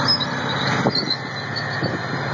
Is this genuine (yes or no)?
yes